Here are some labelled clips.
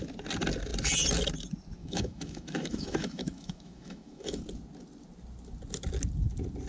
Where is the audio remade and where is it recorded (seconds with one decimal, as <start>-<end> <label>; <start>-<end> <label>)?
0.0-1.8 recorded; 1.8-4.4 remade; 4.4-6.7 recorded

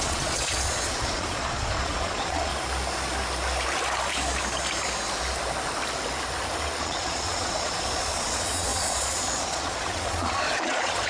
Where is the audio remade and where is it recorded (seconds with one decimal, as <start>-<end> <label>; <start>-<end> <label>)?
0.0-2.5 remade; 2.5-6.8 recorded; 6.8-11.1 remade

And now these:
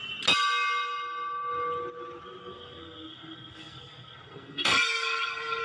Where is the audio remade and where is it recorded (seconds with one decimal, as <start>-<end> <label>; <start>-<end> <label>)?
0.0-2.4 recorded; 2.4-5.6 remade

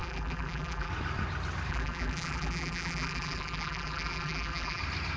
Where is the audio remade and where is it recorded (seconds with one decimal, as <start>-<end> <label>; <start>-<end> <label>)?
0.0-0.9 remade; 0.9-1.7 recorded; 1.7-4.8 remade; 4.8-5.2 recorded

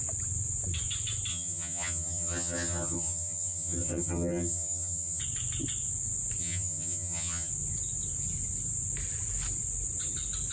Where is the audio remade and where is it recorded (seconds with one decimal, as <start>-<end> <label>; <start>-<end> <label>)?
0.0-1.3 recorded; 1.3-5.2 remade; 5.2-6.4 recorded; 6.4-7.5 remade; 7.5-10.5 recorded